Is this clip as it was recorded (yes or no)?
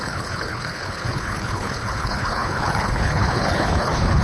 no